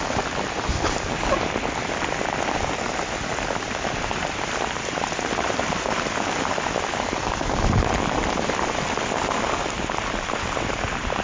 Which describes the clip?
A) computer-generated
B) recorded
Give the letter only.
B